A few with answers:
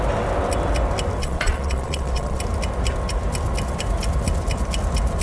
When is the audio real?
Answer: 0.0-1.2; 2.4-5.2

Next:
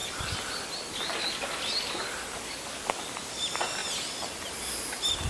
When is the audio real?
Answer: 0.0-5.3